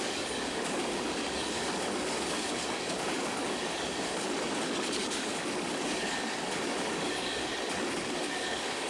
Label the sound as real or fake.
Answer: fake